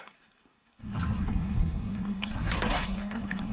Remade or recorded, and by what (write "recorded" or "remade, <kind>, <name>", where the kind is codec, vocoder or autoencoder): remade, codec, SNAC